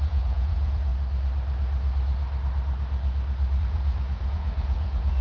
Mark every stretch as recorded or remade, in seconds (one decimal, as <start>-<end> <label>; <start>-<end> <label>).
0.0-0.9 remade; 0.9-3.6 recorded; 3.6-5.2 remade